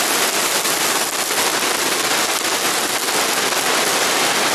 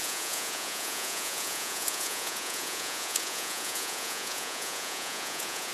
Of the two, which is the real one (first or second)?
first